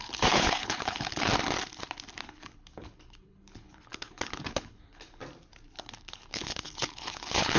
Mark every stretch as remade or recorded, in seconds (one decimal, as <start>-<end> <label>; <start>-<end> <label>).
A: 0.0-1.3 remade; 1.3-2.2 recorded; 2.2-5.2 remade; 5.2-5.8 recorded; 5.8-7.6 remade